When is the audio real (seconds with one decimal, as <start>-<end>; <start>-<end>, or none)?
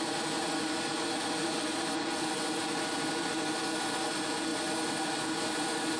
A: 0.0-6.0